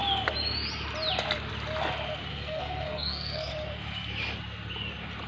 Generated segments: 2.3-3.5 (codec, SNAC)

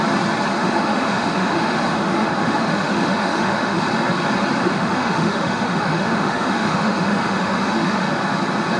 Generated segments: 0.6-3.8 (autoencoder, DAC-VAE); 4.6-8.1